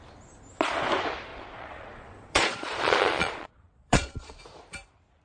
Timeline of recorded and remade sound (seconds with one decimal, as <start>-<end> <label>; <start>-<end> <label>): 0.0-1.3 recorded; 1.3-4.4 remade; 4.4-5.2 recorded